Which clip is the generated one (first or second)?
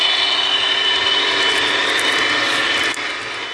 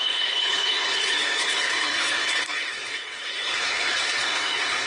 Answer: second